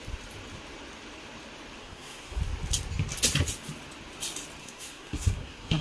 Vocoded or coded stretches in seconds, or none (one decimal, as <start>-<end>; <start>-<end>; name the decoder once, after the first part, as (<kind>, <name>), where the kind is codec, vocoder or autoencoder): 1.8-2.4 (codec, SNAC); 4.6-5.8